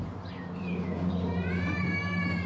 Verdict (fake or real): real